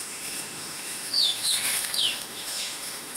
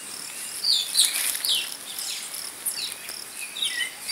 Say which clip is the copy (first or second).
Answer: first